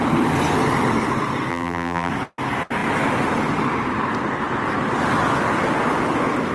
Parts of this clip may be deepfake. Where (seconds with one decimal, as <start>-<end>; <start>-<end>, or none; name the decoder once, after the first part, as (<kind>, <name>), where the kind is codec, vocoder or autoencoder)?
1.5-2.1 (vocoder, BigVGAN v2)